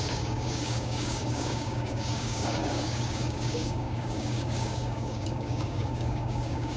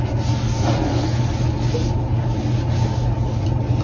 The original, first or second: second